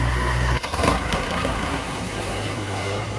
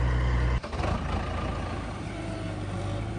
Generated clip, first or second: first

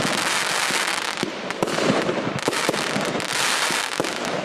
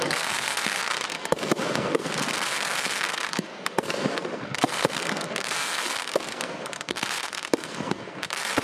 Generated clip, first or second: second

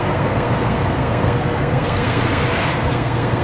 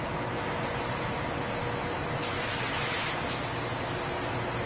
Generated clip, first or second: first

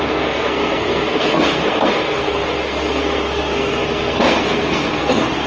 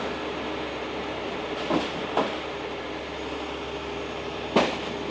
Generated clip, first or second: first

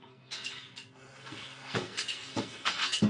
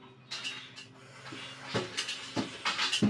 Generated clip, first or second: first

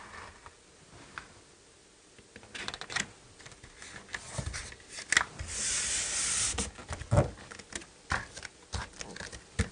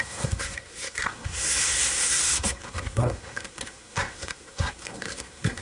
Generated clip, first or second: second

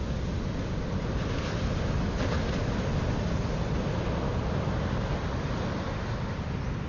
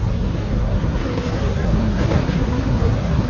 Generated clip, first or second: second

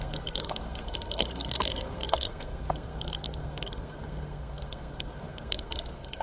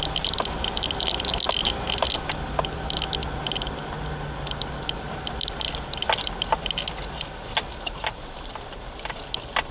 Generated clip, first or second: first